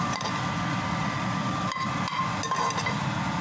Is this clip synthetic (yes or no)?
no